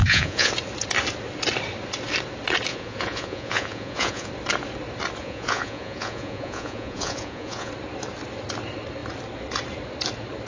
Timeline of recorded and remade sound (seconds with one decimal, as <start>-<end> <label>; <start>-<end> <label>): 0.0-0.5 remade; 0.5-2.7 recorded; 2.7-4.3 remade; 4.3-5.2 recorded; 5.2-7.7 remade; 7.7-10.5 recorded